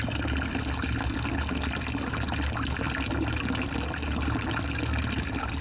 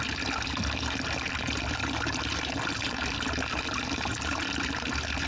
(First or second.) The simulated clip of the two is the second